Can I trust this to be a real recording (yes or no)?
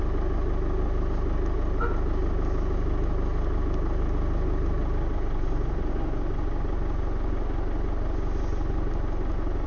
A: yes